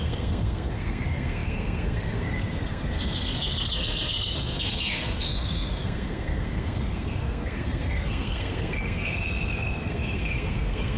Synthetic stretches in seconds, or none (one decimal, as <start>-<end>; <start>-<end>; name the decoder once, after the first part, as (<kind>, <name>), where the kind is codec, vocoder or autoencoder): 0.0-11.0 (codec, SNAC)